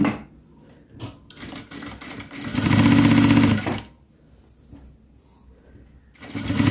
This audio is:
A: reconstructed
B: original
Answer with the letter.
B